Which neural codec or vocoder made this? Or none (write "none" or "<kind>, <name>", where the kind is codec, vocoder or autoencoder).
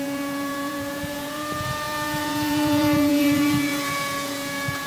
vocoder, Vocos